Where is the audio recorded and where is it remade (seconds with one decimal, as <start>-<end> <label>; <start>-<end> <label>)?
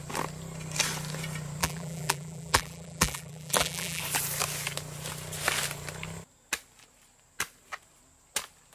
0.0-1.6 recorded; 1.6-4.0 remade; 4.0-8.7 recorded